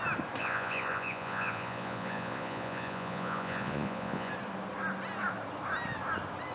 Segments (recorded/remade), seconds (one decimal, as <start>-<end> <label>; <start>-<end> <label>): 0.0-0.4 recorded; 0.4-4.3 remade; 4.3-6.5 recorded